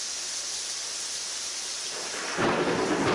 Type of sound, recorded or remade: recorded